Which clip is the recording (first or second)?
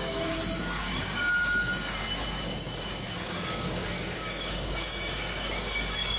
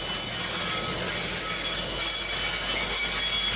second